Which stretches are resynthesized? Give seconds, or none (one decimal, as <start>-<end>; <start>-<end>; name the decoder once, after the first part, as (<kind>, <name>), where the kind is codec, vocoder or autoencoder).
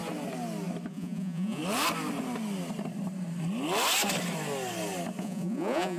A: 0.9-1.6 (vocoder, Vocos); 5.2-6.0